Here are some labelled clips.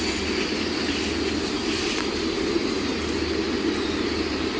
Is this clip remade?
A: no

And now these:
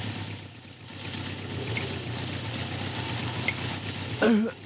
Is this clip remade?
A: no